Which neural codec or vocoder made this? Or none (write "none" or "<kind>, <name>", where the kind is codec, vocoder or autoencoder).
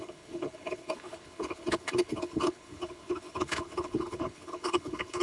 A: codec, HILCodec